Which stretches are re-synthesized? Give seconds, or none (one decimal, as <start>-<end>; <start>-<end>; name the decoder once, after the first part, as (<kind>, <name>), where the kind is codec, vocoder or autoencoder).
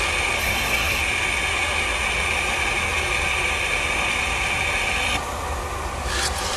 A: 0.4-1.0 (codec, SNAC)